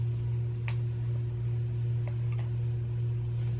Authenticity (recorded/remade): recorded